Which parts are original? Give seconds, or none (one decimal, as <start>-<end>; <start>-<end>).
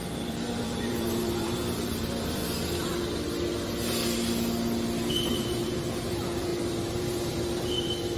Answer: 2.4-5.1